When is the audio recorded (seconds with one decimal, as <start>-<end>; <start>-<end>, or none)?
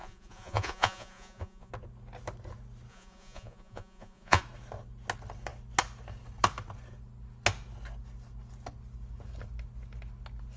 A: 1.7-2.9; 4.4-10.6